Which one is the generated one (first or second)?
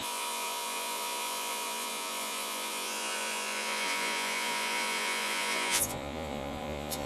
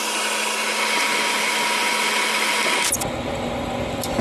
first